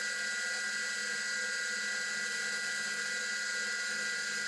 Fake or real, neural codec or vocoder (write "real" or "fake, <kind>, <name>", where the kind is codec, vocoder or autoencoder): real